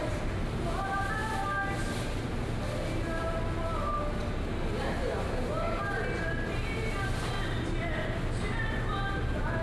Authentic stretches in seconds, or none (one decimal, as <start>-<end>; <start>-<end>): 0.0-9.6